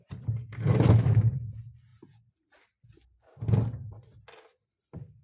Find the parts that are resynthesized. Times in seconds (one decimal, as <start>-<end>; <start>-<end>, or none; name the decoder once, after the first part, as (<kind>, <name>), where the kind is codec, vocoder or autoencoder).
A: 0.0-1.9 (vocoder, BigVGAN v2); 4.6-5.2